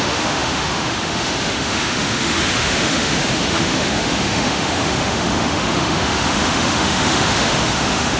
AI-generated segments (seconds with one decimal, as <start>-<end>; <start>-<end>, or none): 0.0-8.2